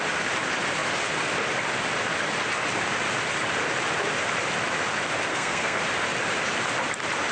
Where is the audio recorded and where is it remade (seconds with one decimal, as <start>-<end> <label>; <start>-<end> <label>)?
0.0-5.3 recorded; 5.3-5.8 remade; 5.8-7.3 recorded